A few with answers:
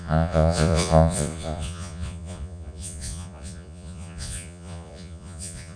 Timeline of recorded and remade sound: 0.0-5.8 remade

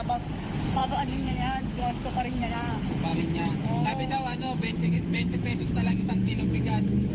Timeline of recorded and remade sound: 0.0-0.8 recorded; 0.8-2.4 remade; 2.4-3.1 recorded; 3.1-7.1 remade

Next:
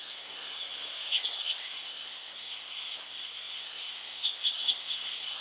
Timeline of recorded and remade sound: 0.0-5.4 remade

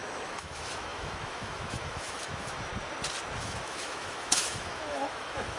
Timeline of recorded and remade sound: 0.0-2.7 remade; 2.7-3.4 recorded; 3.4-5.6 remade

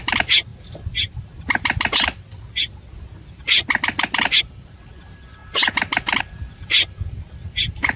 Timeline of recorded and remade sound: 0.0-8.0 recorded